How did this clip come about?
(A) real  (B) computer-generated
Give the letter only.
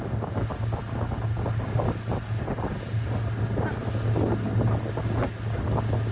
A